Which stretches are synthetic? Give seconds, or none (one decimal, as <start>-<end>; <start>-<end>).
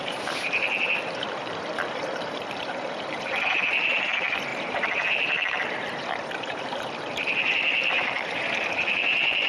0.0-9.5